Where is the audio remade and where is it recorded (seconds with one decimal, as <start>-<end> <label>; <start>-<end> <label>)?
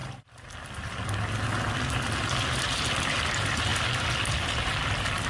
0.0-5.3 recorded